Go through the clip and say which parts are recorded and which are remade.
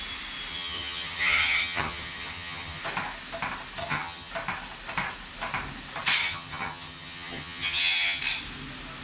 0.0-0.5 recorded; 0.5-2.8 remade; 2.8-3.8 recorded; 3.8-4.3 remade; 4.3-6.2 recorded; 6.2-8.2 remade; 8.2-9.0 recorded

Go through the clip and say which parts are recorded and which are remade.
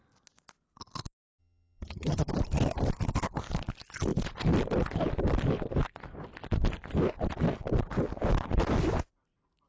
0.0-1.4 recorded; 1.4-2.3 remade; 2.3-9.7 recorded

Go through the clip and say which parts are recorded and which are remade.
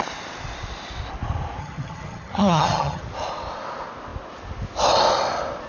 0.0-1.6 recorded; 1.6-3.0 remade; 3.0-5.7 recorded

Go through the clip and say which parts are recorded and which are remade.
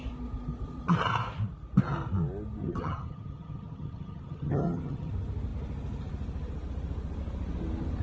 0.0-2.6 recorded; 2.6-5.1 remade; 5.1-8.0 recorded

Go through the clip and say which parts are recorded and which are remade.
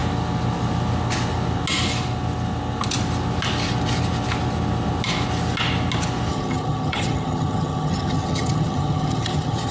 0.0-6.3 recorded; 6.3-9.7 remade